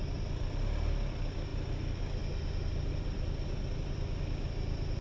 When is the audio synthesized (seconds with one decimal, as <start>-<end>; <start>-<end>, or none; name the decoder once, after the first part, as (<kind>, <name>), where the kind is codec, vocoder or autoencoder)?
none